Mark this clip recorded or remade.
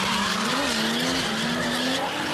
recorded